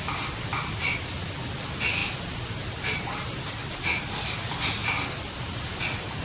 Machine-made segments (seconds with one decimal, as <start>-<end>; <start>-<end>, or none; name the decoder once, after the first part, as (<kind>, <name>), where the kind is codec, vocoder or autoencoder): none